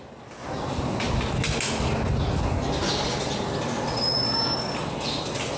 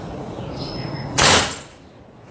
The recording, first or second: first